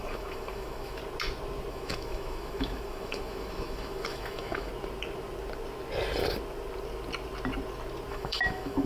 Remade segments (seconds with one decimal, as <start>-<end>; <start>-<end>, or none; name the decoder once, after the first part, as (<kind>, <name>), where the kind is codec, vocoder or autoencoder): 0.0-1.0 (autoencoder, DAC-VAE); 1.7-4.7; 8.1-8.9